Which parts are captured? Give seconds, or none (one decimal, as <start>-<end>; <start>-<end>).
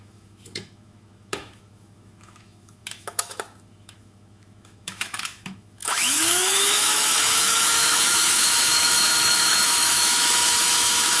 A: none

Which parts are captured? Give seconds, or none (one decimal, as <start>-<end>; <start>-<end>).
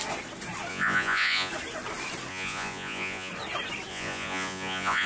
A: 0.0-0.7; 1.5-2.3; 3.3-3.9